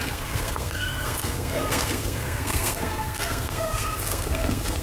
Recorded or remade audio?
remade